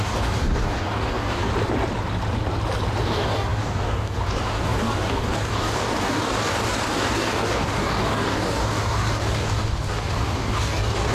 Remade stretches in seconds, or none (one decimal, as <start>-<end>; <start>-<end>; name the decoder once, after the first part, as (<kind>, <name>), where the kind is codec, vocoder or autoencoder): 0.0-1.5 (codec, DAC); 3.0-11.1

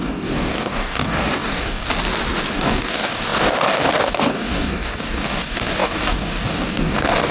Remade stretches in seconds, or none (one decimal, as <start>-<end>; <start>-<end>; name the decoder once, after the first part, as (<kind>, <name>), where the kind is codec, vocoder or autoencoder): 0.0-1.9 (codec, DAC); 2.5-7.3

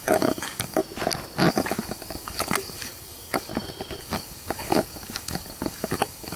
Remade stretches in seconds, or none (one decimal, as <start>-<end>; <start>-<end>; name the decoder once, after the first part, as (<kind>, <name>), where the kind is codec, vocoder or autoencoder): 0.0-0.8 (codec, DAC); 1.5-3.5; 4.0-6.4

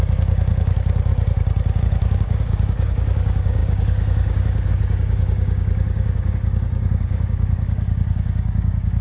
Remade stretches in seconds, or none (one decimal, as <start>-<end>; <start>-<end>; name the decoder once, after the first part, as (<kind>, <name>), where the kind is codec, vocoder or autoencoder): 0.0-1.1 (codec, DAC); 1.8-9.0

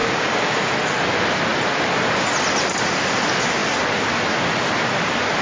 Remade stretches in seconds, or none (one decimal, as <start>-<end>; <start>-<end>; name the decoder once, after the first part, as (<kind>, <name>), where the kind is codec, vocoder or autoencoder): 0.0-0.7 (codec, DAC)

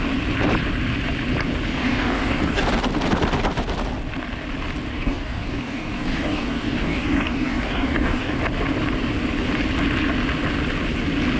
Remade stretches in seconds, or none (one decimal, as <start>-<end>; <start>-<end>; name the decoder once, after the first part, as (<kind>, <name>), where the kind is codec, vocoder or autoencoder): 1.7-2.6 (codec, DAC); 4.9-8.4